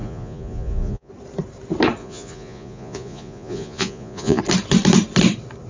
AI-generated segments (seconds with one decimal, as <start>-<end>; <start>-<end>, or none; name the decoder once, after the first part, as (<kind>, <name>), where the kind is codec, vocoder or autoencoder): 0.0-1.1 (vocoder, Vocos); 2.0-4.4